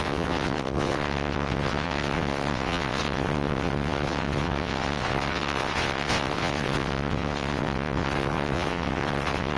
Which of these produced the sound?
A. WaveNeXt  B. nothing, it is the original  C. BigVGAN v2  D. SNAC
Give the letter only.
A